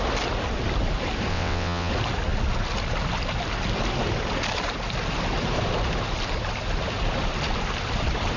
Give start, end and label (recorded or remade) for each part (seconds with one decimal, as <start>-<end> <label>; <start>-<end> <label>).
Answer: 0.0-1.3 recorded; 1.3-1.9 remade; 1.9-8.4 recorded